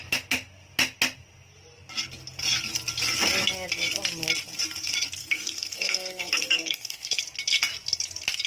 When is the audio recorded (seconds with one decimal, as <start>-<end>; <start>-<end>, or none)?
0.0-5.2; 7.2-8.5